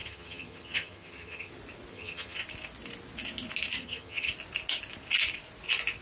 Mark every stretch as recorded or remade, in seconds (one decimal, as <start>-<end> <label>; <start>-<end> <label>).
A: 0.0-1.5 remade; 1.5-1.9 recorded; 1.9-2.4 remade; 2.4-3.8 recorded; 3.8-4.3 remade; 4.3-6.0 recorded

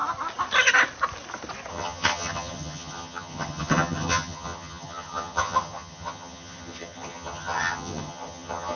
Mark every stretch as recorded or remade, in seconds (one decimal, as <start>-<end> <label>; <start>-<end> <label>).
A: 0.0-1.7 recorded; 1.7-8.8 remade

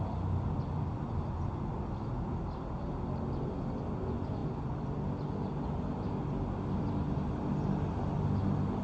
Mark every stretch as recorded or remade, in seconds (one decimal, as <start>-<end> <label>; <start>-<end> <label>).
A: 0.0-8.8 recorded

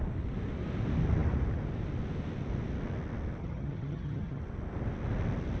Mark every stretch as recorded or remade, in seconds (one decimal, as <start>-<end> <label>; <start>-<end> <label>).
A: 0.0-3.4 recorded; 3.4-4.4 remade; 4.4-5.6 recorded

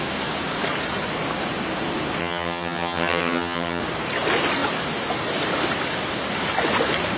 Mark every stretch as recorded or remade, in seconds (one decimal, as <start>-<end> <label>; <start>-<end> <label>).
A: 0.0-2.2 recorded; 2.2-3.8 remade; 3.8-7.2 recorded

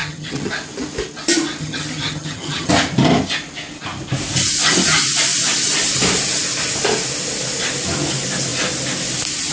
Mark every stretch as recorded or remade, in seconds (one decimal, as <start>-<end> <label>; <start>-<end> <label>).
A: 0.0-0.5 remade; 0.5-1.6 recorded; 1.6-2.7 remade; 2.7-9.5 recorded

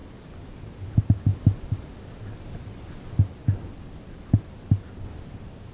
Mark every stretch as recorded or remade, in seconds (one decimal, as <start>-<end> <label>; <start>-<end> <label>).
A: 0.0-5.7 recorded

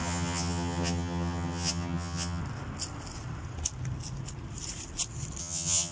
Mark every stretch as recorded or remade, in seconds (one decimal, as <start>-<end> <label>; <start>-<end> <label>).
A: 0.0-2.4 remade; 2.4-5.4 recorded; 5.4-5.9 remade